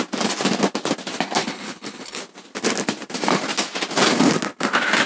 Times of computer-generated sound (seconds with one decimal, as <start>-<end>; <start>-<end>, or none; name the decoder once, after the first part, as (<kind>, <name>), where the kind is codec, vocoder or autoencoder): 1.4-2.2 (codec, HILCodec)